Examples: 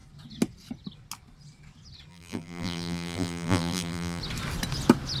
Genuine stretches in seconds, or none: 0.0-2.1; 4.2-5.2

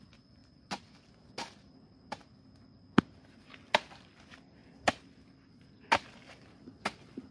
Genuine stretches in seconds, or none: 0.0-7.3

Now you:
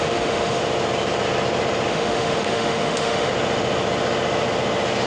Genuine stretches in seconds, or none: 0.6-1.9; 3.3-5.1